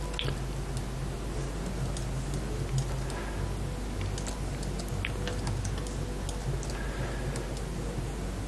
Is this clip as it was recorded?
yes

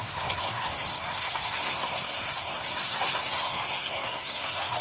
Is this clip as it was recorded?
no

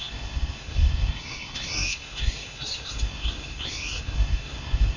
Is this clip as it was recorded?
no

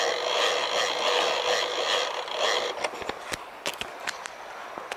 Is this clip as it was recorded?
yes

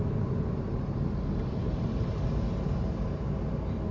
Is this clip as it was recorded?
yes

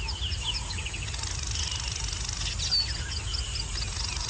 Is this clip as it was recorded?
yes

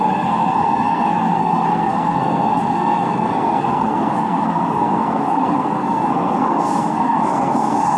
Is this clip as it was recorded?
no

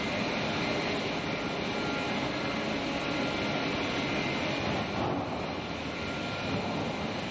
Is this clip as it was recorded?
yes